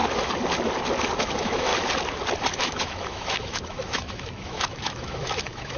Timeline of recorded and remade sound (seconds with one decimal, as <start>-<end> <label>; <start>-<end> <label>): 0.0-1.2 recorded; 1.2-1.7 remade; 1.7-2.6 recorded; 2.6-5.8 remade